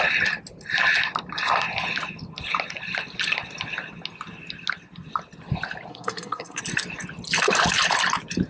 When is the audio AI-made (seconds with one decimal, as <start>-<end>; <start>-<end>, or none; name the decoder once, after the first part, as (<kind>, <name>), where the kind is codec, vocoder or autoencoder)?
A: 5.9-6.6 (codec, SNAC)